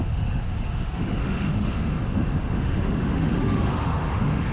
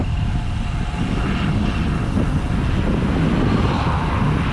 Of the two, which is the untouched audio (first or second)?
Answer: second